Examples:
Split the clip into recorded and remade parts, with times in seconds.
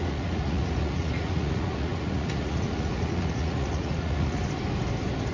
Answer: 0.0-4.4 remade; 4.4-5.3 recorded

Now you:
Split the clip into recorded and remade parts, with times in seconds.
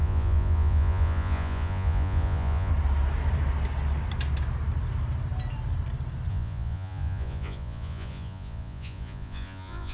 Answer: 0.0-2.7 remade; 2.7-6.3 recorded; 6.3-9.9 remade